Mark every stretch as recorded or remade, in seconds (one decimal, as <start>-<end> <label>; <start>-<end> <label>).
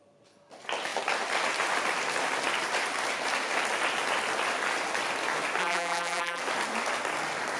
0.0-5.6 recorded; 5.6-6.4 remade; 6.4-7.6 recorded